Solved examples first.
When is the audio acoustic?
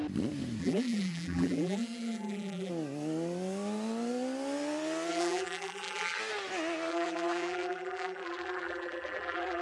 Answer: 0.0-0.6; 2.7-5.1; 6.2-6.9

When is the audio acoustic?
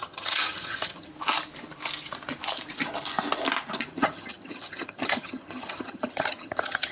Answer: 1.1-3.9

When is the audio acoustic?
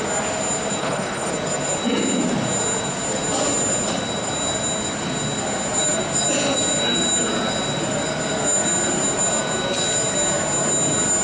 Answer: 0.0-0.8; 1.3-11.2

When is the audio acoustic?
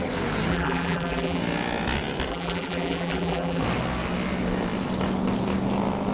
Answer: 0.0-0.5; 1.4-2.3; 3.6-6.1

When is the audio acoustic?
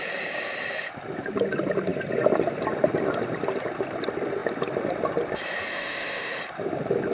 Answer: 0.0-5.7; 6.4-7.1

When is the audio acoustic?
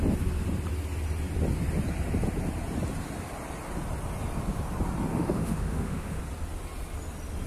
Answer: 0.0-5.1; 6.2-7.5